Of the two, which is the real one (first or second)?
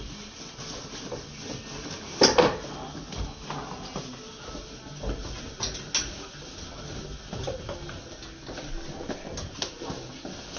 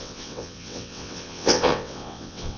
first